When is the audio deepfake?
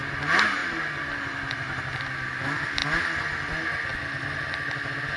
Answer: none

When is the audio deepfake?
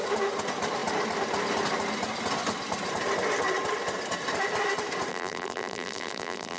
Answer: 5.1-6.6 (vocoder, BigVGAN v2)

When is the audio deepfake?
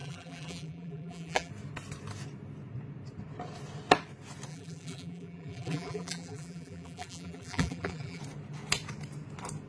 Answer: 0.0-1.5 (vocoder, BigVGAN v2); 4.5-8.2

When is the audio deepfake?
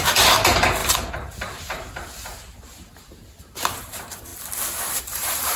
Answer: 0.0-4.3 (vocoder, BigVGAN v2); 5.0-5.6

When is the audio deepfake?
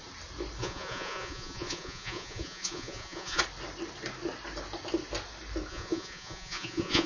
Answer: 0.6-3.4 (vocoder, Vocos); 5.7-7.1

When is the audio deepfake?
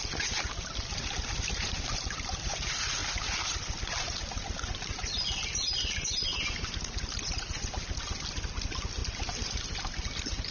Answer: none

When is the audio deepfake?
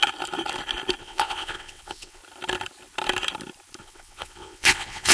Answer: 1.0-2.2 (vocoder, WaveNeXt); 3.8-5.1